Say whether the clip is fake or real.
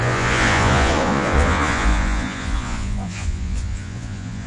fake